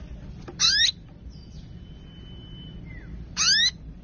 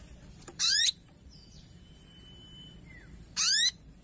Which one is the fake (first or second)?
second